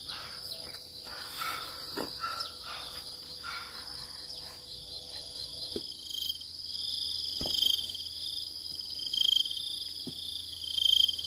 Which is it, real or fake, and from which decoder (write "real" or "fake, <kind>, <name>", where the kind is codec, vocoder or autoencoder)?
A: real